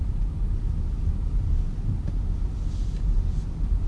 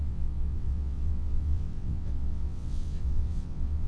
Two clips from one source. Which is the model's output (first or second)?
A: second